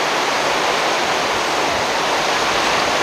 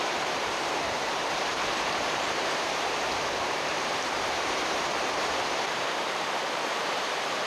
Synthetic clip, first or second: second